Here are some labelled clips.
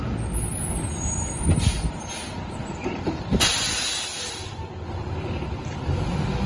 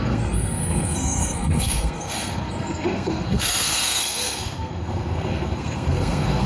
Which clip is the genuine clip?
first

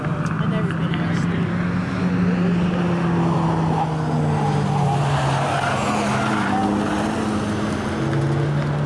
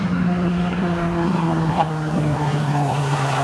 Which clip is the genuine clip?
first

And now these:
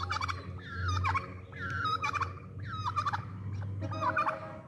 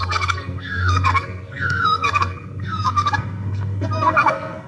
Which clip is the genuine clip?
first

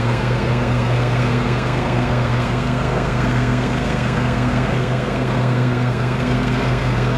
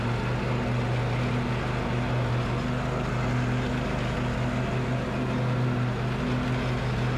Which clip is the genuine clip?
second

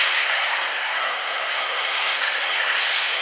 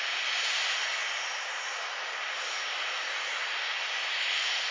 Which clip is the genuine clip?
second